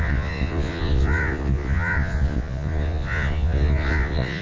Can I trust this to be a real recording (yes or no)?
no